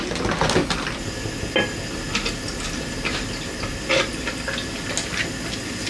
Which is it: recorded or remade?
recorded